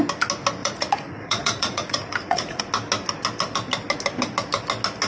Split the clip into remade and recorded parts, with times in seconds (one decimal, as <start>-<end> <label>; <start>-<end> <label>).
0.0-0.6 recorded; 0.6-2.6 remade; 2.6-5.1 recorded